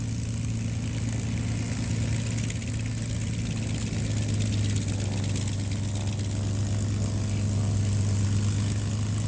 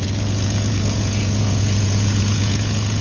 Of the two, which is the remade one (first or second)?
second